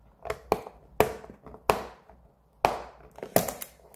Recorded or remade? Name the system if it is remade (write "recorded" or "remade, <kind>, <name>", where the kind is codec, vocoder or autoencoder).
recorded